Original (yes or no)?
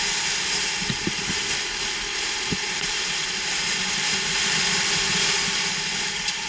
yes